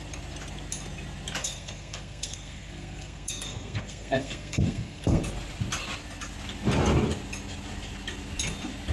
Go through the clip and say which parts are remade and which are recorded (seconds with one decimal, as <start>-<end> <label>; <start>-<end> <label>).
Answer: 0.0-1.4 recorded; 1.4-5.2 remade; 5.2-8.9 recorded